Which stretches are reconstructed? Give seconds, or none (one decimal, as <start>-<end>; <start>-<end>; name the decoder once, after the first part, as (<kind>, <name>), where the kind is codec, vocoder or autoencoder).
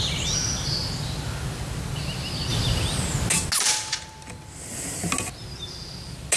none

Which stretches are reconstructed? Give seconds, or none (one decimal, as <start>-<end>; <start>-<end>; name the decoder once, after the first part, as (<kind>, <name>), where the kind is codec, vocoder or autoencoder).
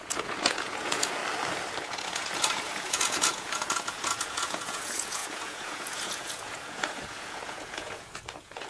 0.0-1.2 (vocoder, Vocos); 1.8-8.7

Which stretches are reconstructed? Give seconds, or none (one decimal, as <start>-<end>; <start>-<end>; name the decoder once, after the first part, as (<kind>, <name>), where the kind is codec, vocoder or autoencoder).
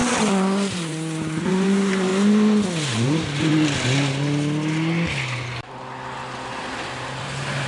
0.0-2.1 (vocoder, BigVGAN v2); 2.9-3.5; 6.7-7.7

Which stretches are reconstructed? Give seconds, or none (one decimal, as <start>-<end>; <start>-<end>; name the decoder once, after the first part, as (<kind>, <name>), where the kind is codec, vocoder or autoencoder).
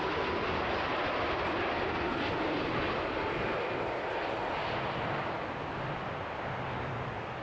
none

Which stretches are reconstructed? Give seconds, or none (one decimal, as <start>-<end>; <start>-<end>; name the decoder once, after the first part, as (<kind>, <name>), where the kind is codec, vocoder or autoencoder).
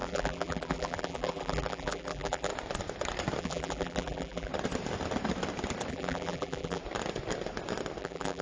0.0-2.5 (vocoder, BigVGAN v2); 3.4-4.5; 5.9-6.8; 8.0-8.4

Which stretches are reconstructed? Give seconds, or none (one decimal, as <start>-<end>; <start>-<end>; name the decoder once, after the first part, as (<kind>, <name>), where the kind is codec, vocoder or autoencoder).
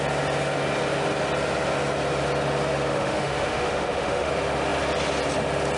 2.9-4.3 (autoencoder, DAC-VAE)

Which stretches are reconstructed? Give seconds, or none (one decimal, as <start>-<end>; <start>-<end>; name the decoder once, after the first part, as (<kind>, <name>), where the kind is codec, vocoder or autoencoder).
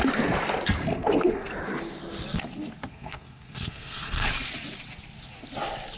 0.9-1.5 (codec, SNAC); 2.9-4.3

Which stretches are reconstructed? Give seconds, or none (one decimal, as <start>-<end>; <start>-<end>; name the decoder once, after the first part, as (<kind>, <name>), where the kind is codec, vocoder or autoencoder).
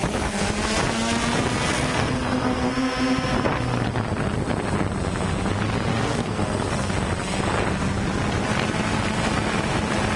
1.7-2.7 (codec, SNAC); 5.9-6.9